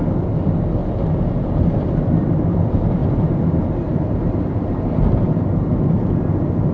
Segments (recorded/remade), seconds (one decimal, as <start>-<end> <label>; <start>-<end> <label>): 0.0-0.8 recorded; 0.8-2.0 remade; 2.0-3.0 recorded; 3.0-3.5 remade; 3.5-3.9 recorded; 3.9-5.7 remade; 5.7-6.7 recorded